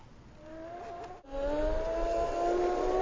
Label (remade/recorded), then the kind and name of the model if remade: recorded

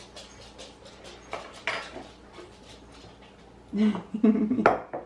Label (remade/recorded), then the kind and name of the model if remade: recorded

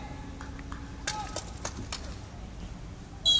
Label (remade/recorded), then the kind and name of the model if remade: recorded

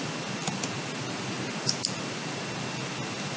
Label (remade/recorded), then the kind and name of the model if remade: recorded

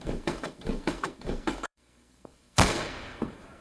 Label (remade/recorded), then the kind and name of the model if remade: remade, codec, SNAC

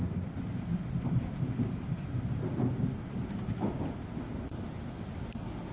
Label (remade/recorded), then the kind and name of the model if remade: recorded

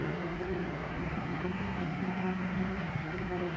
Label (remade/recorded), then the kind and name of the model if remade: remade, codec, SNAC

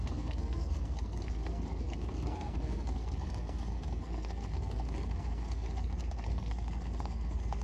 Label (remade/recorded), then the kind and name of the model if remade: remade, codec, SNAC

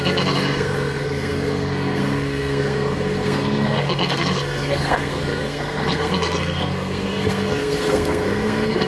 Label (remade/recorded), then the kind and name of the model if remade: remade, codec, SNAC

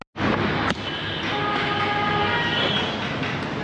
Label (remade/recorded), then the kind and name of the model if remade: recorded